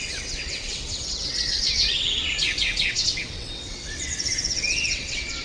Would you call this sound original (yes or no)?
no